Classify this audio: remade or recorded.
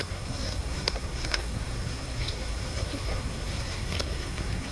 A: remade